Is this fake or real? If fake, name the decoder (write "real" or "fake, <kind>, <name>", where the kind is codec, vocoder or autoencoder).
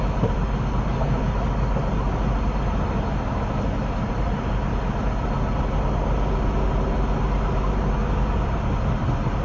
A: real